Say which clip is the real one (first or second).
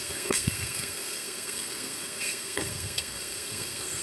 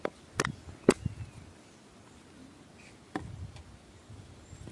second